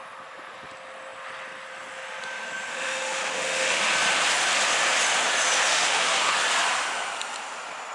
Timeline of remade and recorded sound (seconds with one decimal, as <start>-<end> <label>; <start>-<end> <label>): 0.0-2.7 recorded; 2.7-3.8 remade; 3.8-5.7 recorded; 5.7-6.3 remade; 6.3-7.9 recorded

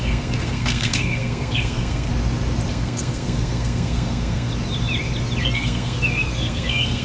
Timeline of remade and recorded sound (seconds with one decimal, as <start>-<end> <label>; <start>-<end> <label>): 0.0-2.1 remade; 2.1-2.7 recorded; 2.7-4.5 remade; 4.5-5.4 recorded; 5.4-7.0 remade

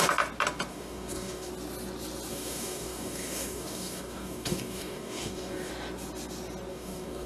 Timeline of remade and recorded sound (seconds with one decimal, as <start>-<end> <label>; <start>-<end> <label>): 0.0-0.7 recorded; 0.7-1.5 remade; 1.5-2.3 recorded; 2.3-5.7 remade; 5.7-6.7 recorded; 6.7-7.3 remade

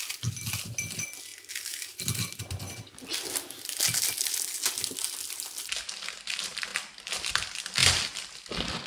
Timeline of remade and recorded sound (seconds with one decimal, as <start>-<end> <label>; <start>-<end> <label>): 0.0-8.9 recorded

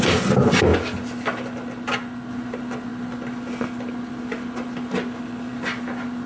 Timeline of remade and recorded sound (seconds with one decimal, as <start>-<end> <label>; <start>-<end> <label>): 0.0-6.3 recorded